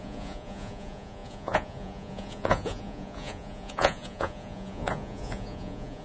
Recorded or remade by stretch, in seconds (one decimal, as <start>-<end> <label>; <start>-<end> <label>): 0.0-6.0 remade